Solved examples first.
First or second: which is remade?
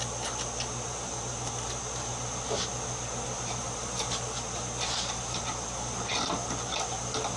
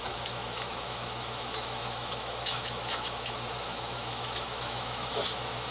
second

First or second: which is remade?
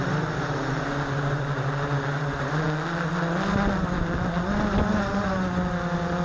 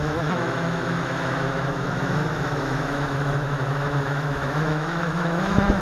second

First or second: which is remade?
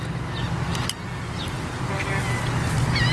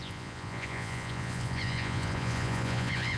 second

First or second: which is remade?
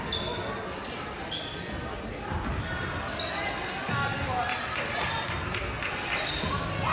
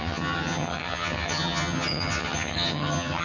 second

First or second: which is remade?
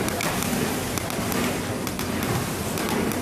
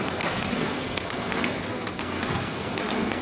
second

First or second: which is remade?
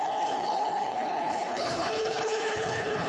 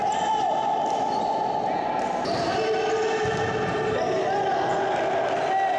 first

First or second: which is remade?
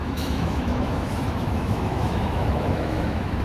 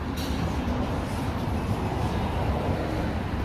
first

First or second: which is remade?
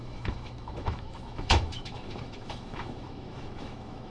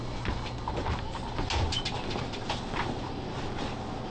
first